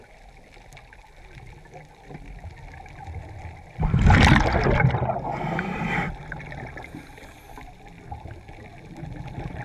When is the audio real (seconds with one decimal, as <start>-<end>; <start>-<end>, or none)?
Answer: 0.0-9.6